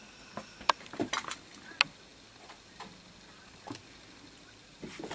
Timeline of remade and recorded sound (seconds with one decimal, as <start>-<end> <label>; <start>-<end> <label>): 0.0-5.1 recorded